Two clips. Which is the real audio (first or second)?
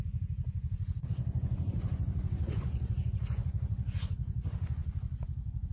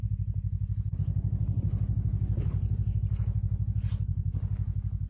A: second